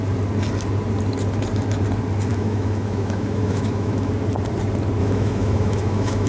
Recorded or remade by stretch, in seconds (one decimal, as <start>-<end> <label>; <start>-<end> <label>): 0.0-2.3 recorded; 2.3-4.1 remade; 4.1-5.0 recorded; 5.0-6.3 remade